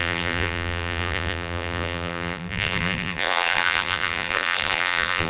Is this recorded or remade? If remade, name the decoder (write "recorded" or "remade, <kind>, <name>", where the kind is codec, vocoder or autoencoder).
remade, vocoder, BigVGAN v2